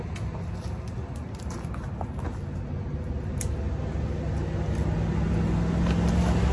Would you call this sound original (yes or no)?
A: yes